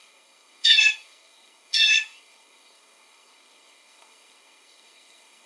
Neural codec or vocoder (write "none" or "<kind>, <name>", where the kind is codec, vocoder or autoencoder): codec, SNAC